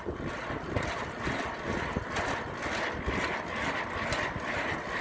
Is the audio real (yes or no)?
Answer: yes